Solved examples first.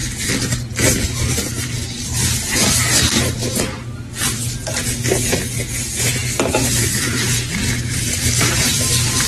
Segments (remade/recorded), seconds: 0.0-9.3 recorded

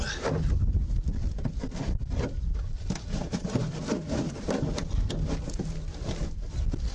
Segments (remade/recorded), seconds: 0.0-6.9 recorded